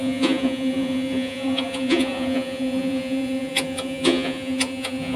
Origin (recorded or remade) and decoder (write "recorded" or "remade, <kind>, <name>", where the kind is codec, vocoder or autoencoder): remade, vocoder, Vocos